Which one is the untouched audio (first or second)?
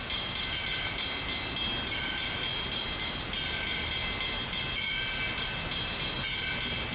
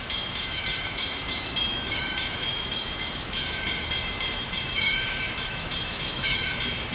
first